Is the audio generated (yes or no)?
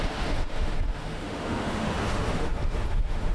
yes